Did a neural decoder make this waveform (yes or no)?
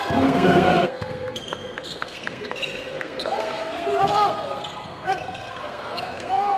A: yes